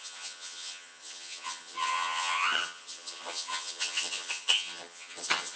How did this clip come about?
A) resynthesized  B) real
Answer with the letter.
A